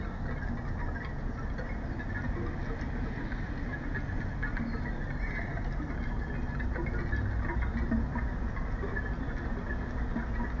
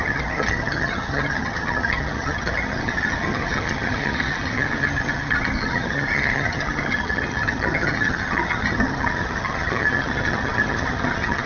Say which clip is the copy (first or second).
second